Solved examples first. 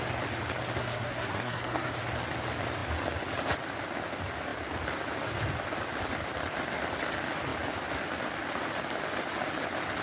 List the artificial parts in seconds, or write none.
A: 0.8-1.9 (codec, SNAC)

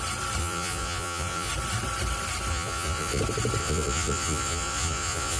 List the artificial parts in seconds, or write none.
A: 0.4-1.5 (vocoder, Vocos); 2.5-3.2; 3.6-5.4